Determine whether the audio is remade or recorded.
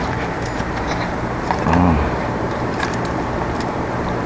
remade